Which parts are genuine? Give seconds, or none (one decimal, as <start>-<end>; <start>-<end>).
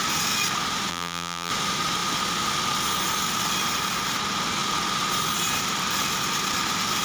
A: 0.0-0.9; 1.5-7.0